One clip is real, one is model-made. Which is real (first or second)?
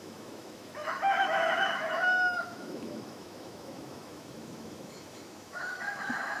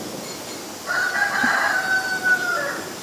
second